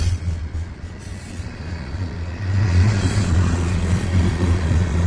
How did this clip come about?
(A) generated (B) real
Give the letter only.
A